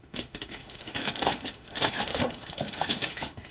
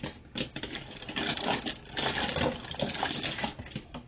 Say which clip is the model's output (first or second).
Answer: first